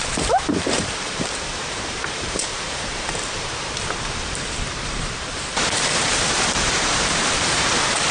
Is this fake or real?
fake